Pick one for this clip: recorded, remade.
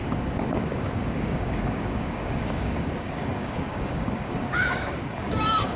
remade